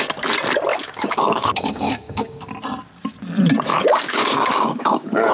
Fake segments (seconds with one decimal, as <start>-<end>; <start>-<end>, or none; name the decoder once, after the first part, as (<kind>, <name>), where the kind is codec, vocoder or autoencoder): 0.7-2.5 (codec, DAC); 3.7-5.3